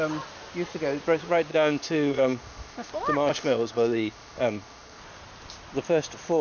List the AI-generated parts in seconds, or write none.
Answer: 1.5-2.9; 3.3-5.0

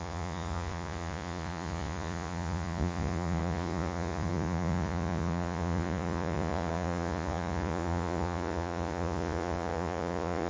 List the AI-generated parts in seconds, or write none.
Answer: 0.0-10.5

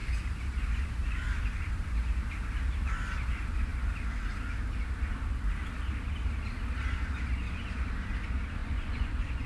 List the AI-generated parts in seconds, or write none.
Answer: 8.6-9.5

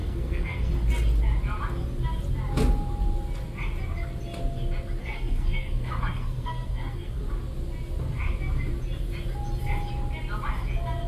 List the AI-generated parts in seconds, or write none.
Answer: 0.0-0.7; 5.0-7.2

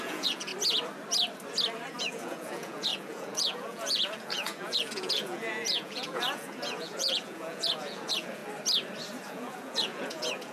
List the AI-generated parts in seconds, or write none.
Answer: 0.0-0.5; 2.0-8.4; 9.2-10.5

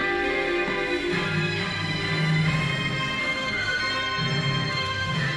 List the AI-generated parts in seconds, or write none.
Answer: 3.2-3.8; 4.7-5.4

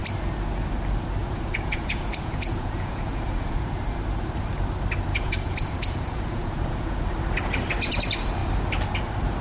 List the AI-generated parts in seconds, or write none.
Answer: 1.2-3.8; 5.1-7.0

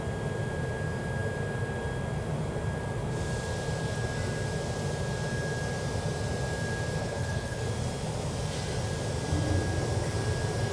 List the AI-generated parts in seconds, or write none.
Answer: 7.0-7.6